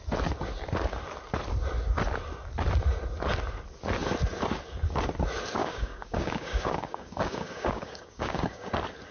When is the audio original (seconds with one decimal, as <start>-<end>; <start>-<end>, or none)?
0.0-5.6; 8.7-9.1